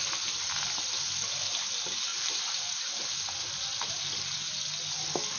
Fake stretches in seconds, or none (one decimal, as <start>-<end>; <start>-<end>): none